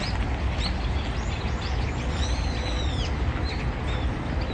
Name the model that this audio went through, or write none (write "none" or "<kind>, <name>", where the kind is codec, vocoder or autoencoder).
none